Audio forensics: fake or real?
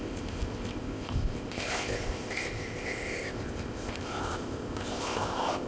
fake